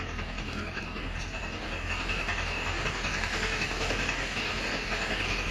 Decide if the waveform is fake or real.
fake